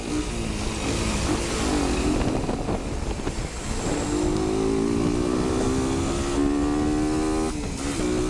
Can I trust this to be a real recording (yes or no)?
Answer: yes